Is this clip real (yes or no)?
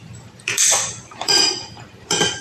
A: no